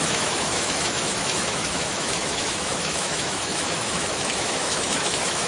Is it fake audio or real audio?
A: fake